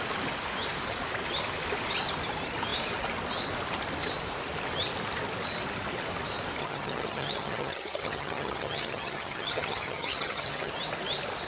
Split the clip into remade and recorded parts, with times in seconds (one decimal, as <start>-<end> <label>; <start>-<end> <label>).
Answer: 0.0-6.6 recorded; 6.6-10.7 remade; 10.7-11.5 recorded